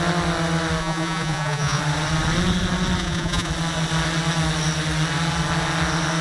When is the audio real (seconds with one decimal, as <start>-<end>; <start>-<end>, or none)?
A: 0.0-0.8; 1.8-3.0; 3.5-6.2